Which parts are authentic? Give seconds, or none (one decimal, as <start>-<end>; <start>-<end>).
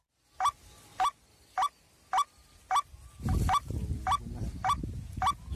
0.0-0.9; 1.9-5.6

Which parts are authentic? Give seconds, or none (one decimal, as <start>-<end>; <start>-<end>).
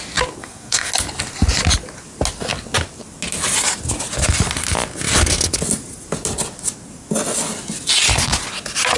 0.0-0.4; 0.9-9.0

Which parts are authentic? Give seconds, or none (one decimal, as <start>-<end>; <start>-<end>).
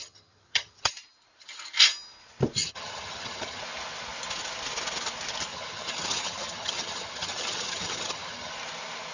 0.9-2.6; 3.6-5.5; 8.5-9.1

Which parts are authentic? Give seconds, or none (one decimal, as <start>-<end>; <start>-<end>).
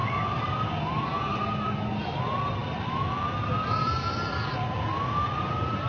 0.0-5.9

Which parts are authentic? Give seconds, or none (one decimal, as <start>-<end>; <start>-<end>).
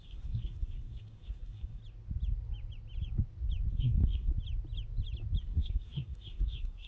1.8-3.7; 4.3-5.4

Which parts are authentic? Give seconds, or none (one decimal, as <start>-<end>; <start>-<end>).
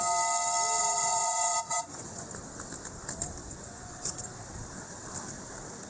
0.0-0.8; 2.3-3.4; 4.2-5.9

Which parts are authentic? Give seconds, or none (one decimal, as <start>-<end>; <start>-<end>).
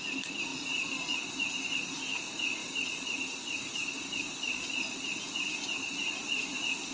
0.0-2.6; 4.7-6.9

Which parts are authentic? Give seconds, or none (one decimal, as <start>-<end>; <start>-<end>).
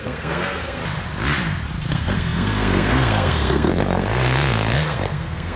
0.8-1.9